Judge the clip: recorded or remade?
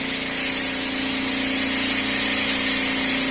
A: recorded